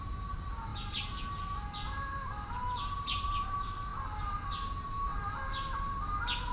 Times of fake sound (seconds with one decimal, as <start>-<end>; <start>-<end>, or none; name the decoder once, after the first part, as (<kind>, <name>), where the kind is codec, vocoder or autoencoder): none